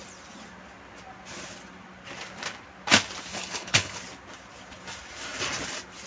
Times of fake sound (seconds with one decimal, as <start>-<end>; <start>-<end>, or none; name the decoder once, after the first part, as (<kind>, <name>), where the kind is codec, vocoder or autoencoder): 3.3-4.0 (codec, HILCodec)